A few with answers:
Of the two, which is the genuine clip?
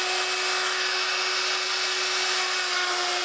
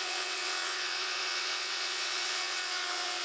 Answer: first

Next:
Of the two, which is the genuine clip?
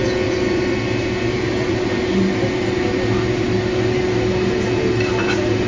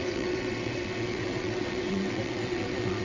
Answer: first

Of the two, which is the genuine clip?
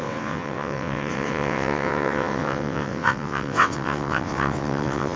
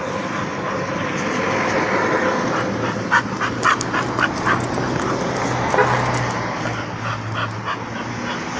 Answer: second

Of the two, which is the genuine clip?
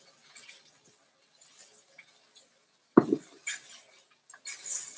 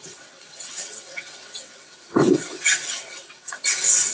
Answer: first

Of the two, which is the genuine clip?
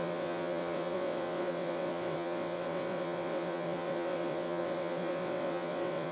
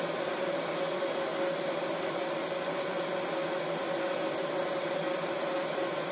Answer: second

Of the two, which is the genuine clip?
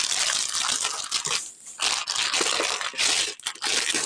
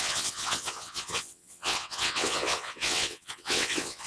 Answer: first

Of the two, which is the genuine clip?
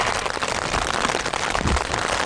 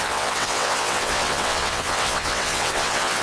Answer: first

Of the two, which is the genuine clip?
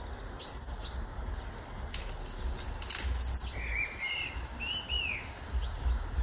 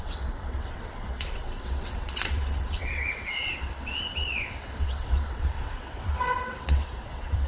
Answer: first